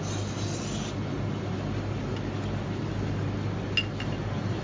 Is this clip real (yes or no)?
yes